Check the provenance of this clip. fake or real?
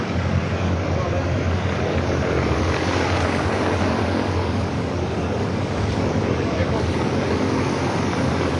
fake